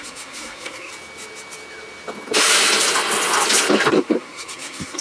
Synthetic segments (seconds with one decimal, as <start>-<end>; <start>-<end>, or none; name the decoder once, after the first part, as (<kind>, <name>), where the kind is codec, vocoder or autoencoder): 0.0-0.9 (codec, SNAC); 3.9-5.0